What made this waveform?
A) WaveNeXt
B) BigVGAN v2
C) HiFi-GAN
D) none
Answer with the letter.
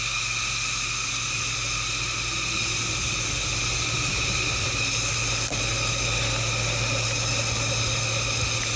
D